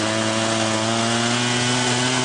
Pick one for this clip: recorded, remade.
recorded